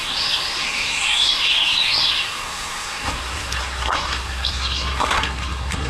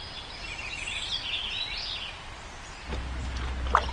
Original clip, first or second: second